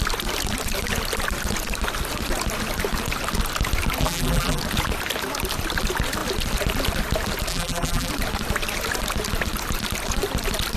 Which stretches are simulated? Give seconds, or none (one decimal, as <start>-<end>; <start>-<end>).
4.0-4.6; 7.5-8.1